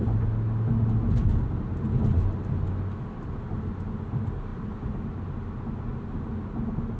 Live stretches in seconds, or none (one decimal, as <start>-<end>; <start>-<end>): 0.0-7.0